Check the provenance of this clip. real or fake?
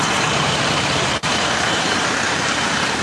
fake